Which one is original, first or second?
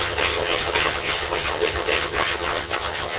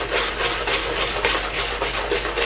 second